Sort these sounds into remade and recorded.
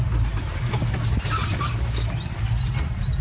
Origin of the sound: recorded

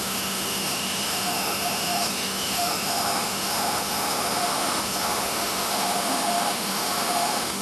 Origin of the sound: remade